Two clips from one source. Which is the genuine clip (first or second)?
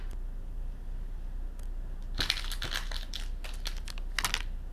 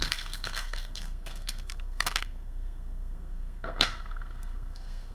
first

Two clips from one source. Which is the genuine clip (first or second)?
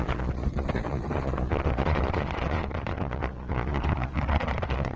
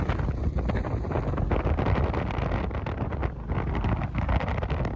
second